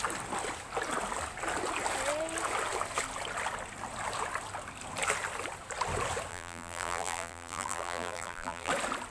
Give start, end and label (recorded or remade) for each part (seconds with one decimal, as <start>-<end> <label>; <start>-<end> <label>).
0.0-6.3 recorded; 6.3-8.7 remade; 8.7-9.1 recorded